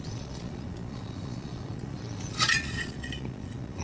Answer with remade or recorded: remade